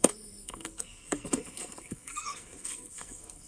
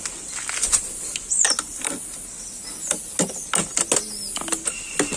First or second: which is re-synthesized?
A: first